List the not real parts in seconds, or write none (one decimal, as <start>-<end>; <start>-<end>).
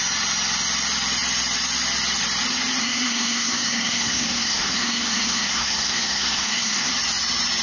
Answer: 2.8-6.9